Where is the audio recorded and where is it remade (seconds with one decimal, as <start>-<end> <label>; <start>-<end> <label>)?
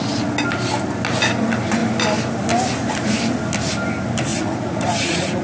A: 0.0-4.3 recorded; 4.3-5.4 remade